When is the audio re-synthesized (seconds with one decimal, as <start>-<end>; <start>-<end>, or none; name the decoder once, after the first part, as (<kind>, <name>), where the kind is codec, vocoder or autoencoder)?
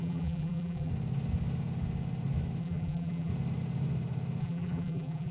0.0-0.9 (vocoder, BigVGAN v2); 2.6-3.3; 4.4-5.3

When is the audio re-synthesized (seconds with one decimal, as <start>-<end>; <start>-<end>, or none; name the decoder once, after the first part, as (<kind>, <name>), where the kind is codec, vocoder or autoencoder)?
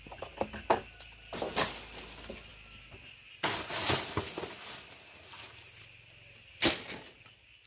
none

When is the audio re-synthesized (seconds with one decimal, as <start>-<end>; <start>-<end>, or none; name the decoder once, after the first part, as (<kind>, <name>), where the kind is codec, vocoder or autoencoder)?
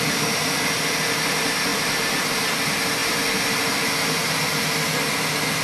1.7-2.6 (vocoder, BigVGAN v2)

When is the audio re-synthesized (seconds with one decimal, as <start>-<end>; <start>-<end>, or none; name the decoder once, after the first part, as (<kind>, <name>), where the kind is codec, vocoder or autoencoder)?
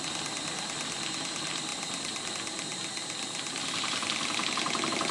1.7-2.3 (vocoder, BigVGAN v2); 2.7-5.1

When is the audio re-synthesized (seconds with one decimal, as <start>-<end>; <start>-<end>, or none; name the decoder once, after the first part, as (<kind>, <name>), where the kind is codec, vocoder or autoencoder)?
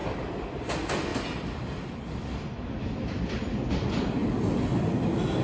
none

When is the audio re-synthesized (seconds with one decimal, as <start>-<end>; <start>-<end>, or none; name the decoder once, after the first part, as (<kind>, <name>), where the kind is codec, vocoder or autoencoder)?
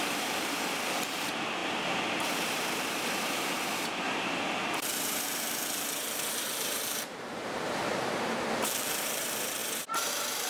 0.0-9.6 (vocoder, BigVGAN v2); 10.1-10.5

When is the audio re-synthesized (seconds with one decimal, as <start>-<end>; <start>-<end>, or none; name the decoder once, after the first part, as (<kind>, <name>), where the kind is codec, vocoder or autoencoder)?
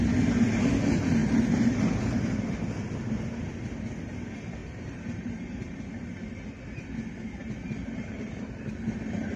1.2-2.3 (vocoder, BigVGAN v2); 4.6-5.8; 7.4-8.5